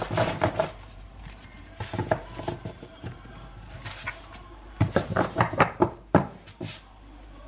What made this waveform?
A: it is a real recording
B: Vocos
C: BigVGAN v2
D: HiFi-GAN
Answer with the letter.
C